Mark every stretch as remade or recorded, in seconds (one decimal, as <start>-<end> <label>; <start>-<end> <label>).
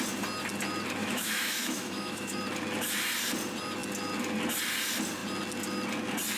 0.0-1.0 recorded; 1.0-2.4 remade; 2.4-6.4 recorded